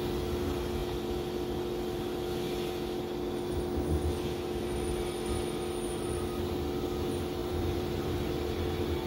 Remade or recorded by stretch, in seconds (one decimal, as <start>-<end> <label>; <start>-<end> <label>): 0.0-7.4 recorded; 7.4-8.3 remade; 8.3-9.1 recorded